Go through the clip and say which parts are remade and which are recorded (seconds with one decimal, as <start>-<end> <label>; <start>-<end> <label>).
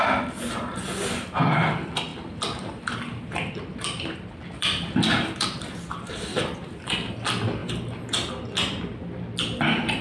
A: 0.0-2.1 recorded; 2.1-7.1 remade; 7.1-7.6 recorded; 7.6-8.3 remade; 8.3-10.0 recorded